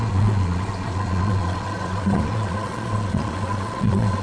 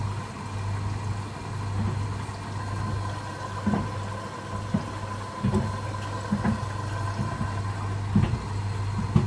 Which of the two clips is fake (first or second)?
first